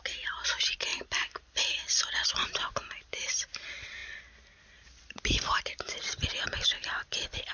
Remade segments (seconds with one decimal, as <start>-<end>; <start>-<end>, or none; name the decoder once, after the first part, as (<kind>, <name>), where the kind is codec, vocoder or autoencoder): none